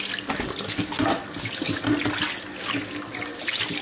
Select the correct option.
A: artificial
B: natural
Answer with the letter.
B